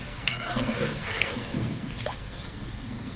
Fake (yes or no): yes